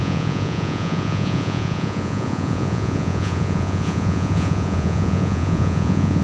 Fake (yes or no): yes